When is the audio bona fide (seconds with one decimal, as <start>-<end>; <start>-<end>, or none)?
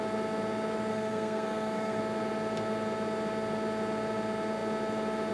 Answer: 0.0-0.9; 2.0-5.3